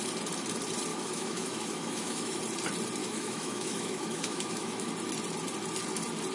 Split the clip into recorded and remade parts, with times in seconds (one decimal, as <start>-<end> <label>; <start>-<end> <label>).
0.0-0.9 recorded; 0.9-2.4 remade; 2.4-3.0 recorded; 3.0-4.9 remade; 4.9-6.3 recorded